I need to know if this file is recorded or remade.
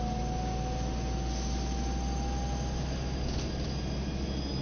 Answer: recorded